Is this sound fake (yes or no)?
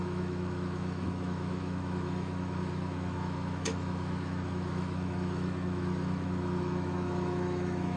yes